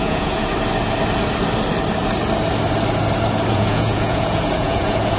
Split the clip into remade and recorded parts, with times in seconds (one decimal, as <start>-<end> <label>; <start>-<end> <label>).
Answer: 0.0-0.4 remade; 0.4-3.5 recorded; 3.5-5.2 remade